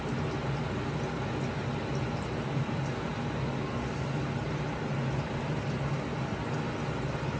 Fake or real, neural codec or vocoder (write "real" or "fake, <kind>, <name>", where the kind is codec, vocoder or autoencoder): real